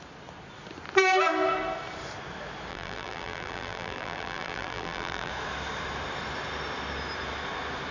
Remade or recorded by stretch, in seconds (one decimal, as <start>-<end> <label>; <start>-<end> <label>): 0.0-2.7 recorded; 2.7-5.3 remade; 5.3-7.9 recorded